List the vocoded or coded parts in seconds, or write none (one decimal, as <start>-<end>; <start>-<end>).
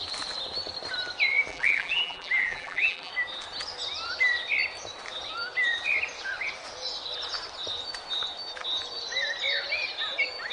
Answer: 1.5-3.1